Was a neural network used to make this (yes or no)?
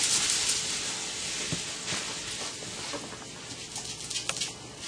no